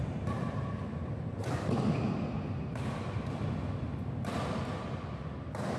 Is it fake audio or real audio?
real